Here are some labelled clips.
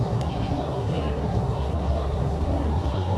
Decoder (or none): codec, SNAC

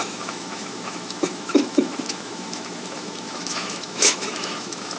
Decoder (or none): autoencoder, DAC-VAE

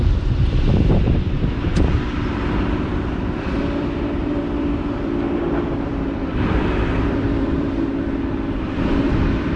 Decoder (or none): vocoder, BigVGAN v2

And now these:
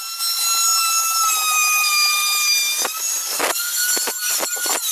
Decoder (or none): vocoder, BigVGAN v2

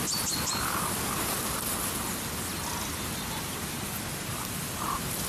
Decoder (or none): none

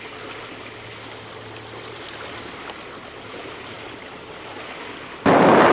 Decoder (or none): none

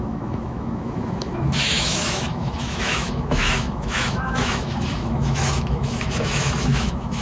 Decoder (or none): autoencoder, DAC-VAE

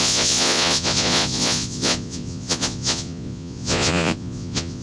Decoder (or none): vocoder, Vocos